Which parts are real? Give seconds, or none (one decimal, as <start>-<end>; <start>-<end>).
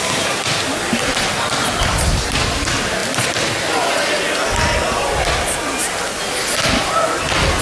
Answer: 0.0-7.6